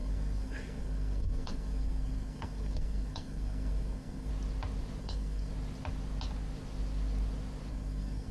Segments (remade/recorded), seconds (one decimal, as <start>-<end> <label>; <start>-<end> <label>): 0.0-4.3 remade; 4.3-5.0 recorded; 5.0-5.5 remade; 5.5-7.7 recorded; 7.7-8.3 remade